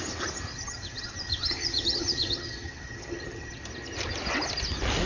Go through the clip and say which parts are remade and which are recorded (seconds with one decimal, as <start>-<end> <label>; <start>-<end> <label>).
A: 0.0-0.5 recorded; 0.5-3.6 remade; 3.6-5.1 recorded